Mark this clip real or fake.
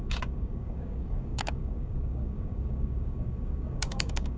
fake